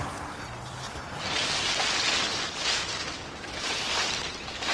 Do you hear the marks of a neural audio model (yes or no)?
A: no